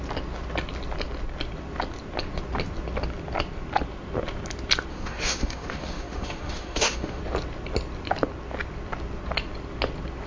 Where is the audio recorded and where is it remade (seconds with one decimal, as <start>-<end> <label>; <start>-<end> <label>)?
0.0-4.9 recorded; 4.9-7.2 remade; 7.2-10.3 recorded